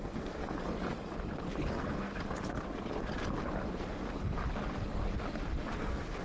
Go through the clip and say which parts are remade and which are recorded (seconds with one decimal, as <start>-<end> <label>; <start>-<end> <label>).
0.0-0.4 remade; 0.4-1.7 recorded; 1.7-2.1 remade; 2.1-5.8 recorded; 5.8-6.2 remade